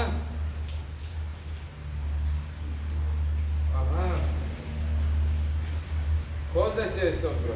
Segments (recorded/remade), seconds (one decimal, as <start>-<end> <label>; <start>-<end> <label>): 0.0-7.6 recorded